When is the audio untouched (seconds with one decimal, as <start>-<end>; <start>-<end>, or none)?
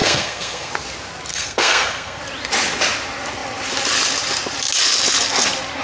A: 0.7-1.3; 2.2-5.8